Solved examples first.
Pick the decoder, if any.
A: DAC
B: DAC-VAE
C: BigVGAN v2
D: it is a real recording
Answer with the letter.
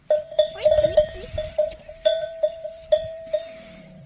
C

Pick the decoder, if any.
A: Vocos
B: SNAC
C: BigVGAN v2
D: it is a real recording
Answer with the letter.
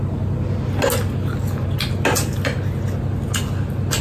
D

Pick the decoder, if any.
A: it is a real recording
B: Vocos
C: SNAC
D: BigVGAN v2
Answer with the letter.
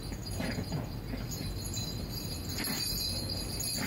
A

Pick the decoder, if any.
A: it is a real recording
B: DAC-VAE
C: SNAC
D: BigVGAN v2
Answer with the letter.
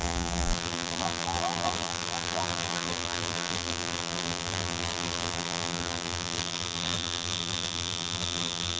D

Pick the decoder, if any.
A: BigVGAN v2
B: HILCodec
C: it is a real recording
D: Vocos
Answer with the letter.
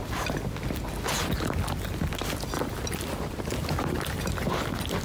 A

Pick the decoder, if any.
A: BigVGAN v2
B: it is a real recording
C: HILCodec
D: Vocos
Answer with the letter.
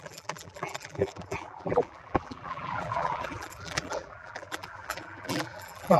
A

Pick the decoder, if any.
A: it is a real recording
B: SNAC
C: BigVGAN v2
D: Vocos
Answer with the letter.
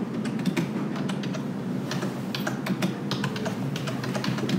A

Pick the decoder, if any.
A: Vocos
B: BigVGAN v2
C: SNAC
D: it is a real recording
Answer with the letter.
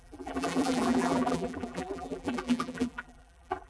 B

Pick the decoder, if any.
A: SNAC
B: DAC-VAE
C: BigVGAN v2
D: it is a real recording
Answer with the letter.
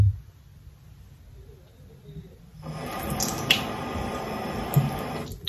D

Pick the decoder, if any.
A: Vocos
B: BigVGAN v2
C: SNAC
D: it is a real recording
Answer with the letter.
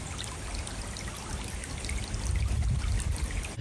D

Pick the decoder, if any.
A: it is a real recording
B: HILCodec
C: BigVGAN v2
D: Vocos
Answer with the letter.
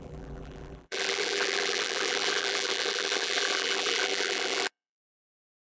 C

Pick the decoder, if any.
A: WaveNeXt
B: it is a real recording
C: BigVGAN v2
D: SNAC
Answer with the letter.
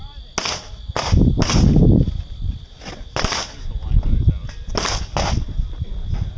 B